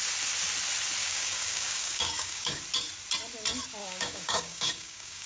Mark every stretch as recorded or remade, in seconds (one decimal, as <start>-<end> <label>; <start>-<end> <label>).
0.0-1.0 recorded; 1.0-2.6 remade; 2.6-3.8 recorded; 3.8-5.3 remade